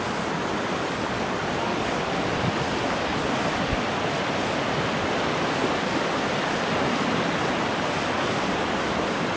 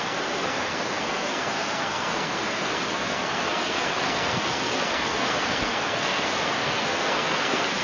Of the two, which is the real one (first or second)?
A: first